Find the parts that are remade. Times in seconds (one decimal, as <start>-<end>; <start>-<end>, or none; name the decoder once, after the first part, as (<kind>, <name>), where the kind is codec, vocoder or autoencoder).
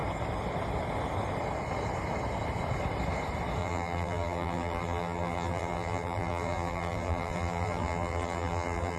3.6-9.0 (vocoder, BigVGAN v2)